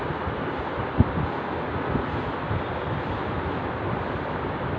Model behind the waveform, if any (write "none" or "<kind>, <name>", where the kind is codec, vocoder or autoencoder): none